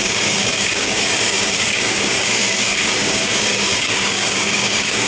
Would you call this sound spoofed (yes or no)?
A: yes